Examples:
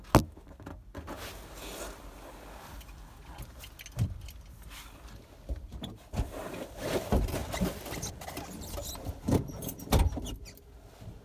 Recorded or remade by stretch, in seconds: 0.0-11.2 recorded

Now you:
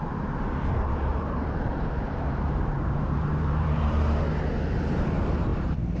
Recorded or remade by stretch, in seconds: 0.0-1.1 recorded; 1.1-4.2 remade; 4.2-5.5 recorded; 5.5-6.0 remade